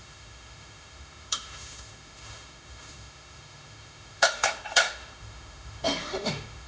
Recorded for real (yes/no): no